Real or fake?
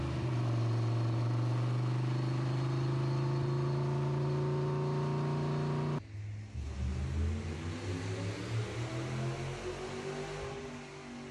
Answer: real